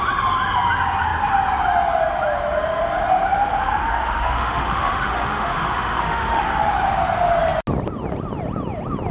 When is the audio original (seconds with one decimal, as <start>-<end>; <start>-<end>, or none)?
0.0-3.3; 6.7-9.1

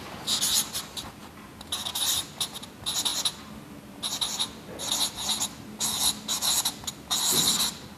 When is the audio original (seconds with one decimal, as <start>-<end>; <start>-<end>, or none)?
0.0-8.0

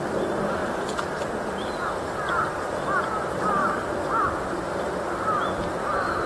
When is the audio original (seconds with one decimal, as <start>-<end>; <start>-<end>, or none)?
0.0-6.3

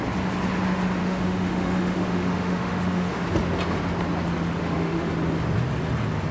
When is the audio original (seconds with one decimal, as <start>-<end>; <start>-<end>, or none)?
0.0-1.0; 3.2-4.6; 5.1-6.3

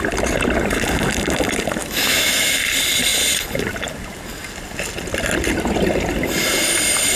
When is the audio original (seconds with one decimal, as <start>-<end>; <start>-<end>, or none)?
0.0-1.8; 2.5-7.2